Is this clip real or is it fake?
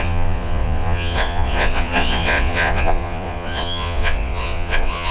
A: fake